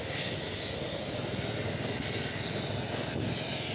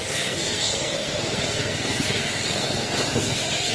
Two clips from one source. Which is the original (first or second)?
first